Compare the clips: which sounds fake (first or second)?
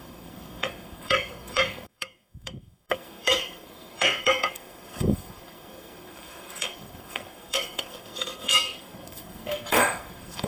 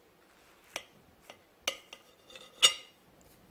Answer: first